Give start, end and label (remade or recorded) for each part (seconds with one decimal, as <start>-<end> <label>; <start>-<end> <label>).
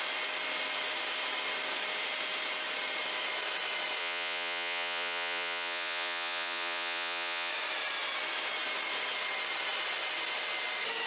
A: 0.0-4.0 recorded; 4.0-7.5 remade; 7.5-11.1 recorded